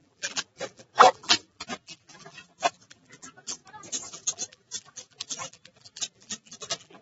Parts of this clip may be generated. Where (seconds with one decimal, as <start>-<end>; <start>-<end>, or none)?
0.0-3.6; 4.1-7.0